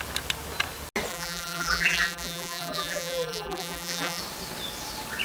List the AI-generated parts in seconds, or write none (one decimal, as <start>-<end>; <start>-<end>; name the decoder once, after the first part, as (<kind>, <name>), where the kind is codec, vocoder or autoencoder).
1.1-4.2 (vocoder, BigVGAN v2)